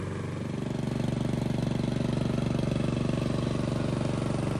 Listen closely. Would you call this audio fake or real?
real